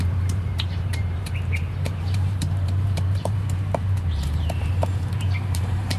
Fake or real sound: fake